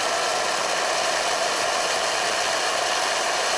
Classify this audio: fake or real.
real